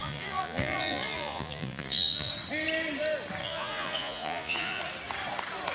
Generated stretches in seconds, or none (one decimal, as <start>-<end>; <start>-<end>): 0.0-2.3; 3.4-4.8